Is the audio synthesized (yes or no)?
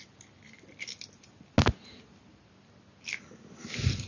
no